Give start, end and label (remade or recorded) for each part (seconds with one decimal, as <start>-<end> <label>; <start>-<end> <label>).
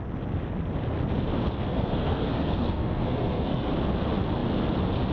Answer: 0.0-1.7 recorded; 1.7-3.7 remade; 3.7-5.1 recorded